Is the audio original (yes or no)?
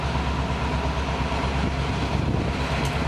yes